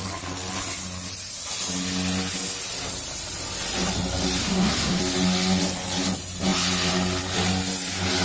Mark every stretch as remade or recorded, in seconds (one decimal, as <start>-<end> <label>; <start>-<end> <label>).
0.0-4.4 recorded; 4.4-5.0 remade; 5.0-8.2 recorded